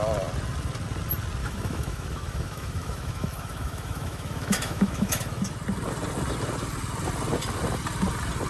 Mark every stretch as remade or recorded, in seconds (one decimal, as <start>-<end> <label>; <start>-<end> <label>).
0.0-1.4 recorded; 1.4-5.4 remade; 5.4-8.5 recorded